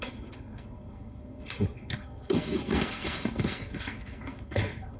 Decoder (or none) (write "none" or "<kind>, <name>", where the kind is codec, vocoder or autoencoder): codec, SNAC